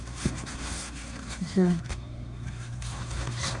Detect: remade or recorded remade